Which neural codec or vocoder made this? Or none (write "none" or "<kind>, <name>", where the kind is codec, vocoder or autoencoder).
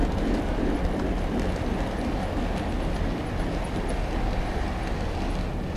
none